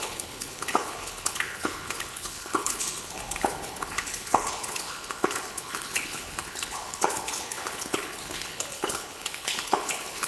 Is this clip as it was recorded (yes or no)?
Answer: no